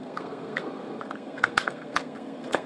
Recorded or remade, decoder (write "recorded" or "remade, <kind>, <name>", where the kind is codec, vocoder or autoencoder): remade, codec, SNAC